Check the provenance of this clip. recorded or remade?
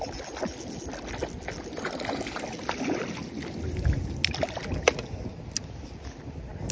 recorded